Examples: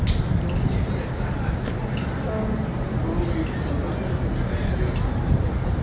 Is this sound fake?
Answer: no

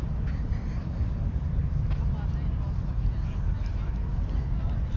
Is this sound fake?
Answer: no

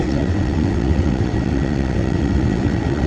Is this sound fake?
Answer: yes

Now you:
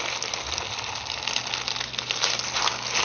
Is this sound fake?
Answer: no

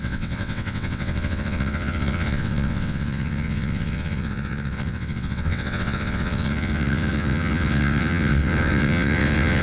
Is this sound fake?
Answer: yes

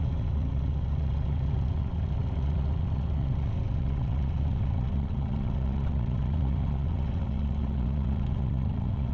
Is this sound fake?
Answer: yes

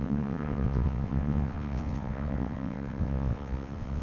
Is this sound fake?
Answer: yes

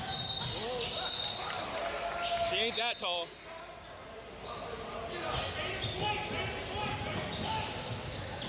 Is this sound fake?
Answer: no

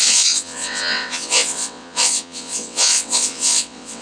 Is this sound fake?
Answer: yes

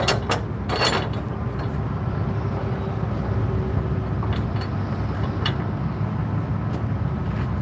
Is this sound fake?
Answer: no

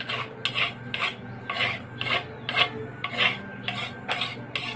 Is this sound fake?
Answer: no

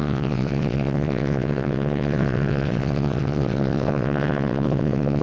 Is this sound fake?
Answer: yes